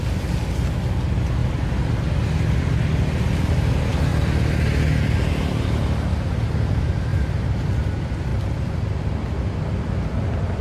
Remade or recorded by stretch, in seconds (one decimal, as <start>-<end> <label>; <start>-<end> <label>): 0.0-10.6 recorded